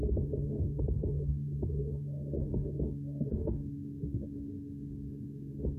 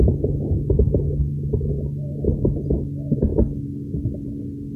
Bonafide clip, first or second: second